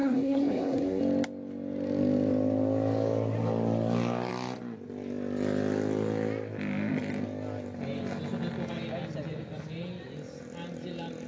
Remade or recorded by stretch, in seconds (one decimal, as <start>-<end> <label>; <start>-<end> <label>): 0.0-1.0 remade; 1.0-11.3 recorded